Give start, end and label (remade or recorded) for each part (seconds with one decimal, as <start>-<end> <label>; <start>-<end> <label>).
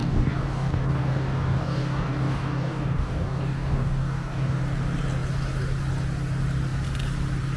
0.0-4.6 remade; 4.6-7.6 recorded